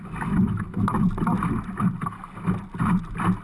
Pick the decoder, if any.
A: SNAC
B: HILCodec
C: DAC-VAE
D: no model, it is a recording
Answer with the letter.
D